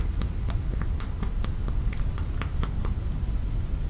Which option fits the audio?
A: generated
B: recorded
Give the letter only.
B